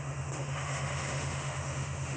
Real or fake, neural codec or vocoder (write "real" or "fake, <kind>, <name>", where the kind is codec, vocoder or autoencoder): fake, autoencoder, DAC-VAE